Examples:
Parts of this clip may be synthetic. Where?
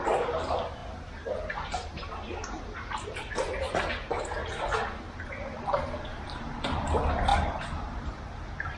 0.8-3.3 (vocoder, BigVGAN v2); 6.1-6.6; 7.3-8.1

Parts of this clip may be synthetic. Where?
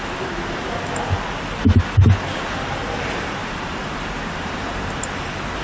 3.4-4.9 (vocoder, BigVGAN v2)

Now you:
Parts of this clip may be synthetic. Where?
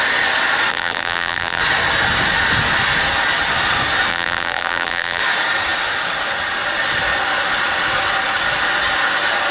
0.7-1.6 (vocoder, BigVGAN v2); 4.1-5.2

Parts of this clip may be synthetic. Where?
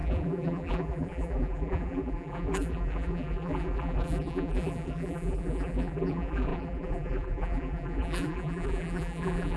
0.0-9.6 (vocoder, BigVGAN v2)